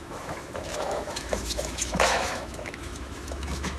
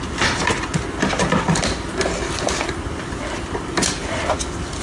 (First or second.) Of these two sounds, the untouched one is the second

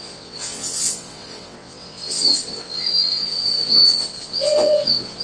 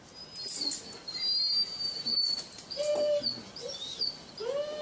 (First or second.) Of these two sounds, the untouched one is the second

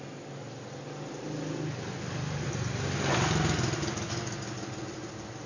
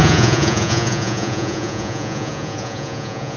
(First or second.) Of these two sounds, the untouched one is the first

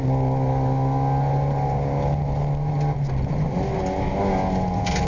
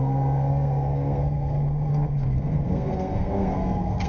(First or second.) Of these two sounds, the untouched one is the first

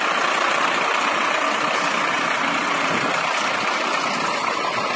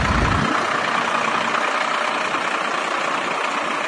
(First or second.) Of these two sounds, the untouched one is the second